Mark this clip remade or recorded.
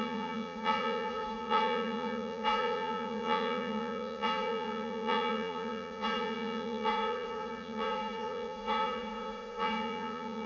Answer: remade